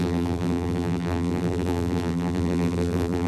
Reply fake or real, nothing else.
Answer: fake